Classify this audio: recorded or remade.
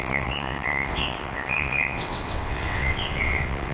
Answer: remade